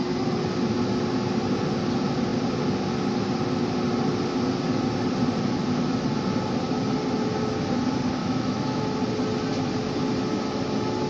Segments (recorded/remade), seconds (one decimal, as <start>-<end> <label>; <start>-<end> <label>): 0.0-8.2 recorded; 8.2-8.8 remade; 8.8-11.1 recorded